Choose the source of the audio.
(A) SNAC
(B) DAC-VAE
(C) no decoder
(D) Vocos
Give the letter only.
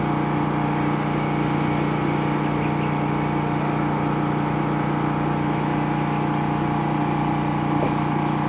C